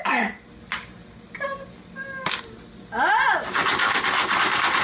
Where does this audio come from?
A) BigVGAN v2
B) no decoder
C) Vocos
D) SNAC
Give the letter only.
B